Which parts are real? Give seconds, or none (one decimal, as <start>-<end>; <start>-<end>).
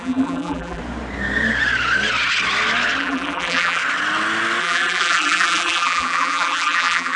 0.8-3.0; 3.8-4.6